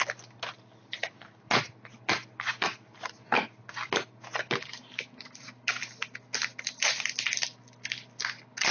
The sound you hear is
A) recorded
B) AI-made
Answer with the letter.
A